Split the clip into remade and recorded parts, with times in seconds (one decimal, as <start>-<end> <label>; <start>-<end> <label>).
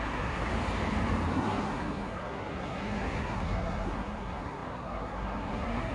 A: 0.0-0.5 remade; 0.5-1.3 recorded; 1.3-5.9 remade